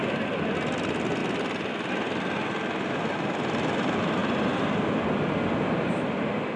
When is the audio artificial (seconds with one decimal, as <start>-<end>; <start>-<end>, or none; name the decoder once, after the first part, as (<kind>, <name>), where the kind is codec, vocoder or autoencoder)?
none